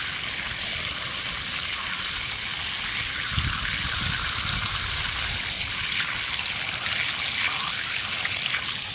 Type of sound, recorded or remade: recorded